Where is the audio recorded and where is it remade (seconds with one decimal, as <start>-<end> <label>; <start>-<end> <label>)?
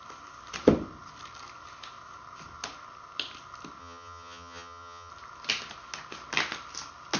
0.0-3.8 recorded; 3.8-5.1 remade; 5.1-7.2 recorded